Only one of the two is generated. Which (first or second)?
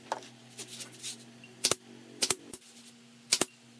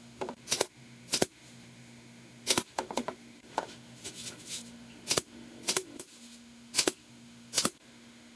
second